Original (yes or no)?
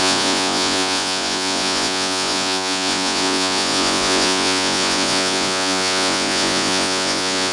no